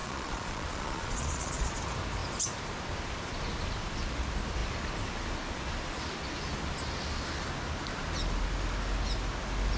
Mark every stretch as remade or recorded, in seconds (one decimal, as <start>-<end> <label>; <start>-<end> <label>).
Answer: 0.0-1.7 remade; 1.7-9.8 recorded

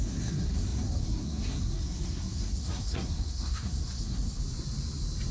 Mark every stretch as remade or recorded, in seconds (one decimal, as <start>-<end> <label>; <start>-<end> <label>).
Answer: 0.0-4.4 remade; 4.4-5.3 recorded

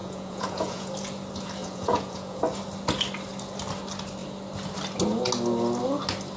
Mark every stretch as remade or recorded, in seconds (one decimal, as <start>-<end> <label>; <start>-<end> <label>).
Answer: 0.0-0.9 remade; 0.9-1.6 recorded; 1.6-2.4 remade; 2.4-6.4 recorded

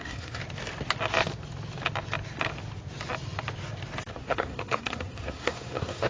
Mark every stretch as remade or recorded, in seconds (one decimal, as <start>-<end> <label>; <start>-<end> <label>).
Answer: 0.0-0.4 remade; 0.4-4.1 recorded; 4.1-6.1 remade